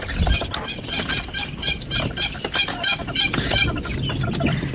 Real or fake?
real